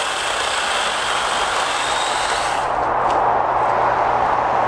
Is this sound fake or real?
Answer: real